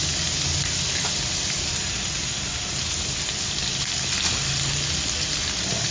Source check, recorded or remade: recorded